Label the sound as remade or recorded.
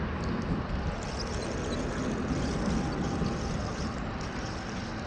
recorded